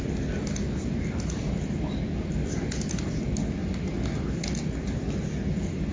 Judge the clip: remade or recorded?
recorded